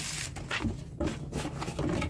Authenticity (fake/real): real